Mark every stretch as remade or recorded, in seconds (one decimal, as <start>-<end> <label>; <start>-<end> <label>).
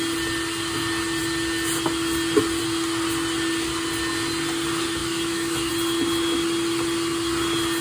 0.0-5.0 recorded; 5.0-5.7 remade; 5.7-7.8 recorded